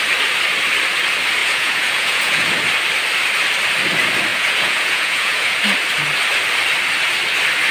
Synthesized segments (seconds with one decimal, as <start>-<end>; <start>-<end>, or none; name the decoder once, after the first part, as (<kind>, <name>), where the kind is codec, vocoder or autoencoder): 1.4-2.5 (vocoder, Vocos); 4.3-5.6